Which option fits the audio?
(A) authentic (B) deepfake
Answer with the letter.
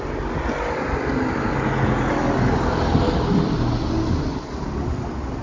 A